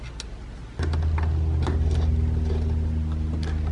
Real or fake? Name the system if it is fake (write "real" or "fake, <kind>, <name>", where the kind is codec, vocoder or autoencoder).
real